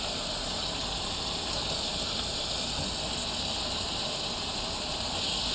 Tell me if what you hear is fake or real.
real